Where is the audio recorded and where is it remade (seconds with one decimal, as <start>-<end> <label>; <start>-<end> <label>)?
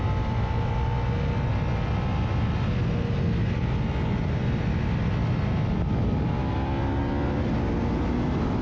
0.0-8.6 recorded